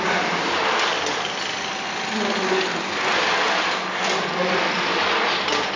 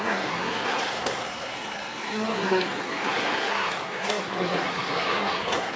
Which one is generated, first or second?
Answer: second